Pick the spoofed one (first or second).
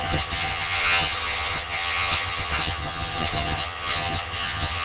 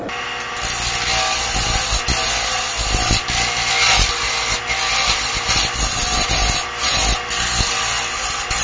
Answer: first